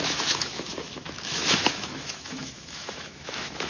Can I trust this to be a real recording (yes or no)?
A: no